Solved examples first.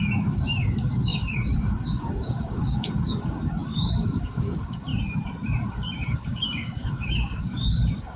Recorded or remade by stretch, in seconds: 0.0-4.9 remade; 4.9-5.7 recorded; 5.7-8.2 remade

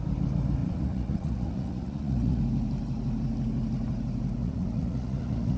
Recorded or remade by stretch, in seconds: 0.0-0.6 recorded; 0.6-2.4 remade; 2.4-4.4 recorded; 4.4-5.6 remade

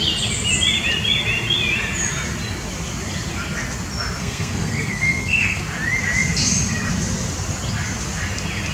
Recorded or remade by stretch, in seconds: 0.0-4.2 recorded; 4.2-5.6 remade; 5.6-8.7 recorded